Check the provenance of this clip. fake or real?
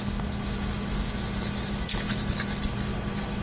real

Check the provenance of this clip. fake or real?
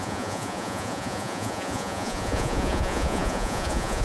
fake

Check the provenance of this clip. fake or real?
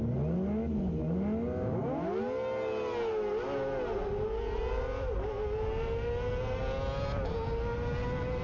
real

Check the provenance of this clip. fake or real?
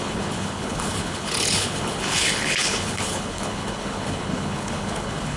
fake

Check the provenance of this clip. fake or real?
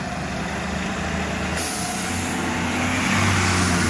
real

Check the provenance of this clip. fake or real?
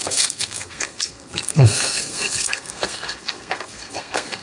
fake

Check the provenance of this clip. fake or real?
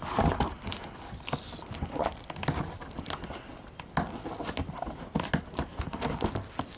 real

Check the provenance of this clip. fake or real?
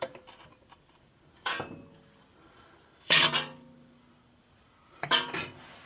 fake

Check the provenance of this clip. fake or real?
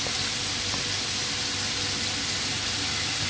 real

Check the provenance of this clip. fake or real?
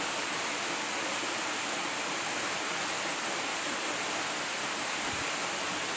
real